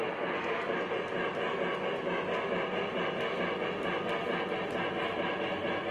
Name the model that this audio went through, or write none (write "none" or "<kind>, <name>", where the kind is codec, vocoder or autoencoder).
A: none